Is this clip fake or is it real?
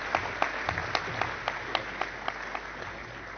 real